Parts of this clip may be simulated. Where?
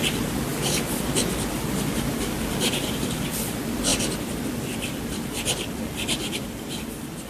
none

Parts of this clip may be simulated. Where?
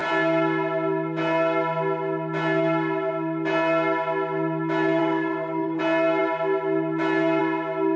5.0-5.8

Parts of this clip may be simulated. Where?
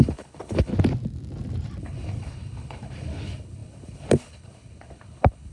0.0-0.7; 1.8-5.5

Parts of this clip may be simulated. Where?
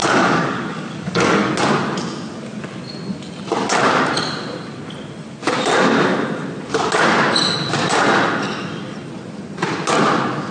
0.0-1.5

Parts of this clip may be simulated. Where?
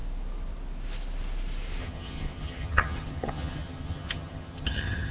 1.8-5.1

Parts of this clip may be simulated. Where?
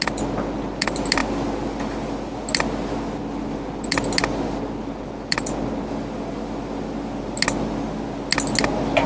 none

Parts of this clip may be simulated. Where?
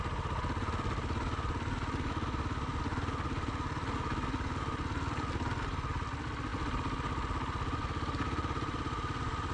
none